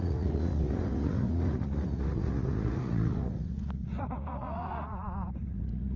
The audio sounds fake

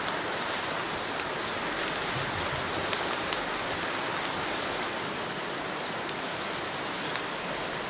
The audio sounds fake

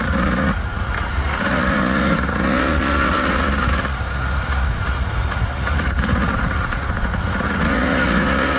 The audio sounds fake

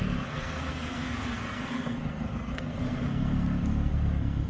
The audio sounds fake